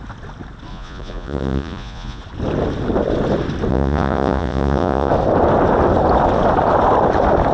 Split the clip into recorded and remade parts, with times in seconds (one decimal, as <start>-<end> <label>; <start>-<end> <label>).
0.0-0.7 recorded; 0.7-2.2 remade; 2.2-3.7 recorded; 3.7-5.1 remade; 5.1-7.5 recorded